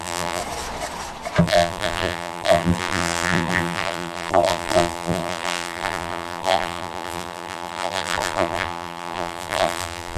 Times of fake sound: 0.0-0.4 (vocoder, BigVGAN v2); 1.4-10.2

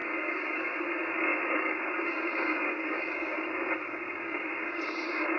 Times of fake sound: 0.0-5.4 (codec, DAC)

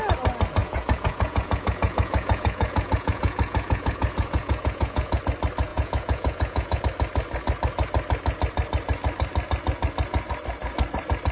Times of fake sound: 0.6-5.2 (vocoder, Vocos); 5.7-6.8

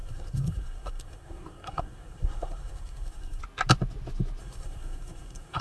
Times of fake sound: 0.0-3.4 (codec, SNAC); 4.4-5.6

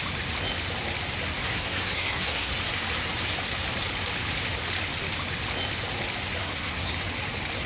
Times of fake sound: 1.4-2.5 (codec, SNAC); 6.4-6.9